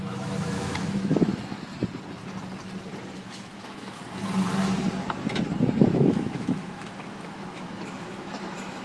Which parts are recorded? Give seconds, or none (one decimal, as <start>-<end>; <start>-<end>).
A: 1.3-3.2; 4.0-5.8